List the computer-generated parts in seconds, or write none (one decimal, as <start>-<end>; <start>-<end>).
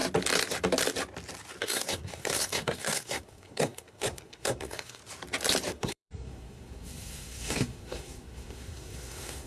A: 1.6-5.0; 5.7-9.5